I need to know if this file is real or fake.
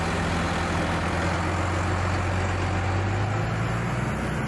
real